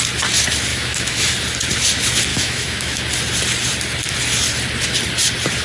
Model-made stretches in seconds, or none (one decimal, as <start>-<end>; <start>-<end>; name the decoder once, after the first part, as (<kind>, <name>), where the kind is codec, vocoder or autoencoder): 0.7-1.3 (autoencoder, DAC-VAE); 2.3-3.1